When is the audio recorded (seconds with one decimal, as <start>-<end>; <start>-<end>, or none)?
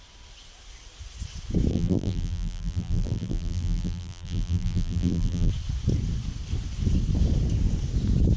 0.0-1.7; 5.5-8.4